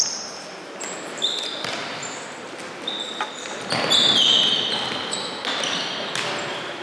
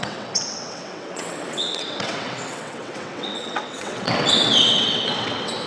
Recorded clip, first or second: first